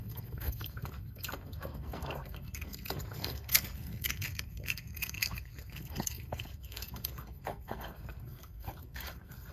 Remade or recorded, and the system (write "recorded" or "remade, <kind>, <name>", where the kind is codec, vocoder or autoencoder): remade, codec, SNAC